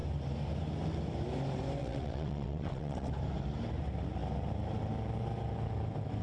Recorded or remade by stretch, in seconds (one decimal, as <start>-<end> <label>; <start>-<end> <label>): 0.0-1.8 recorded; 1.8-3.1 remade; 3.1-6.2 recorded